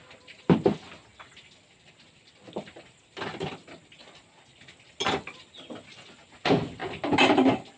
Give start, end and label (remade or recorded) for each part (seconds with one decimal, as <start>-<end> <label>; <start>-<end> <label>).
0.0-7.8 recorded